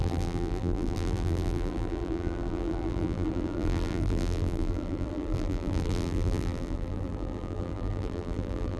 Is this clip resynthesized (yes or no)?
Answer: yes